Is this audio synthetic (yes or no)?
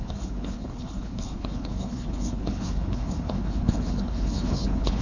yes